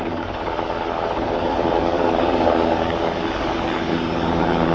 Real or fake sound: fake